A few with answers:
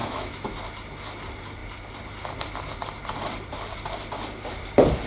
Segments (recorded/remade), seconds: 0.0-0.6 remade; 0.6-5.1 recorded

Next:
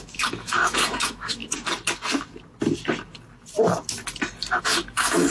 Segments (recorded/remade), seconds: 0.0-1.4 remade; 1.4-4.6 recorded; 4.6-5.3 remade